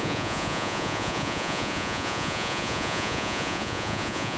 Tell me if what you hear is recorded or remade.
remade